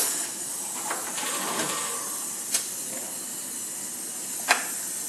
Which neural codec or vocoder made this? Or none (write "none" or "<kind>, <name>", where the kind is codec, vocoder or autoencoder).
none